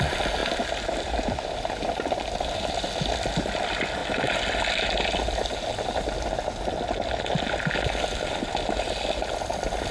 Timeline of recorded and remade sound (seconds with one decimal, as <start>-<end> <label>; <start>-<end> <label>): 0.0-0.4 remade; 0.4-1.0 recorded; 1.0-4.0 remade; 4.0-9.3 recorded; 9.3-9.9 remade